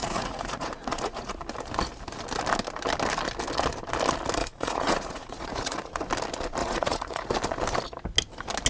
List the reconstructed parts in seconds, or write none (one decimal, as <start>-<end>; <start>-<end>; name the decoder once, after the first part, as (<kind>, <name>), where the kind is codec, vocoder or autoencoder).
0.0-1.4 (vocoder, Vocos); 4.4-6.0; 6.6-7.3